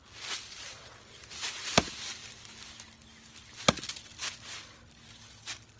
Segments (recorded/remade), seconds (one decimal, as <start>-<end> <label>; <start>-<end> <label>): 0.0-5.8 recorded